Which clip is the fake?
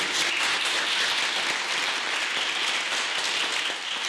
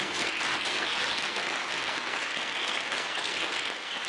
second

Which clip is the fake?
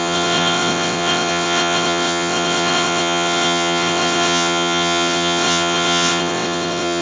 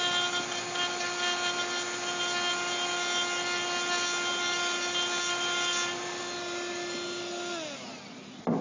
first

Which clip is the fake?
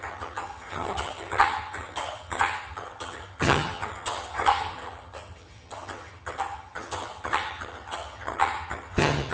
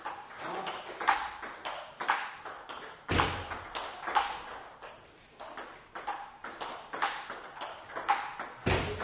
first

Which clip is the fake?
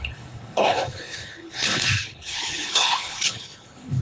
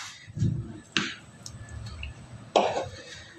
first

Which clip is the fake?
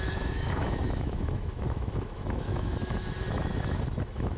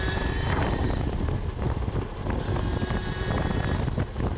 first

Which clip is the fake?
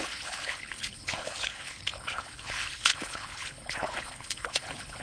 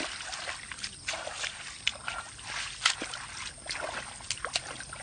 first